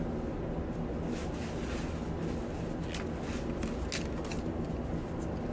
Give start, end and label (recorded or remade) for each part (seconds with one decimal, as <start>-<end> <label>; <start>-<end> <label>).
0.0-5.5 recorded